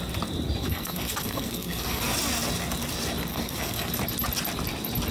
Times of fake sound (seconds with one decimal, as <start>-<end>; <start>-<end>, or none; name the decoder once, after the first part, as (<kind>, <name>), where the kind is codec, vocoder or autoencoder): 0.6-2.0 (codec, SNAC); 3.3-3.9